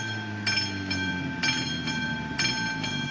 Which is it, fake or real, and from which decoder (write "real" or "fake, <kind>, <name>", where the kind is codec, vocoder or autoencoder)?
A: real